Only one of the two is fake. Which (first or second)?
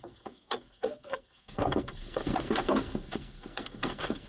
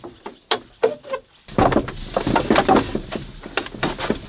first